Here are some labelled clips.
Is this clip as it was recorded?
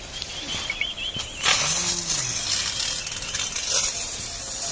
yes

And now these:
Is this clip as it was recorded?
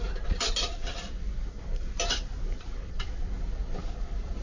yes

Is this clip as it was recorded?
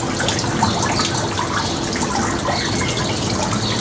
yes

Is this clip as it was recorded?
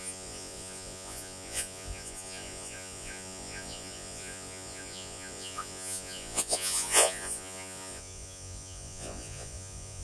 no